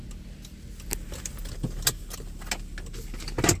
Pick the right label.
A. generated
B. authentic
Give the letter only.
B